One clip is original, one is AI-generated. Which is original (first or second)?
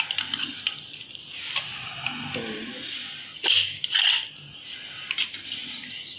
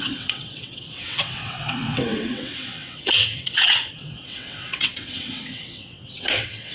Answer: first